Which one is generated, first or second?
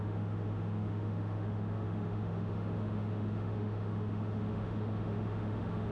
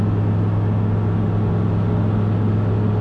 first